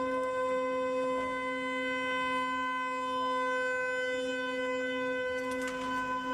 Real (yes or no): yes